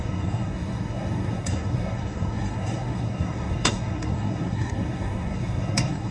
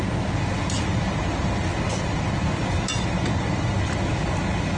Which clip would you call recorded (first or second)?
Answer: second